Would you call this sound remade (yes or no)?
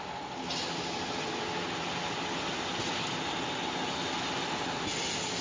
no